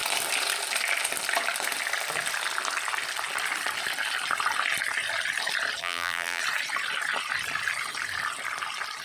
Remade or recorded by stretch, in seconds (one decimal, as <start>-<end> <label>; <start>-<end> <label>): 0.0-5.8 recorded; 5.8-6.4 remade; 6.4-9.0 recorded